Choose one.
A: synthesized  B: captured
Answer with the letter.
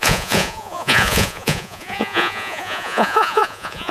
A